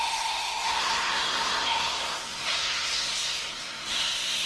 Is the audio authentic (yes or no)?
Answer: no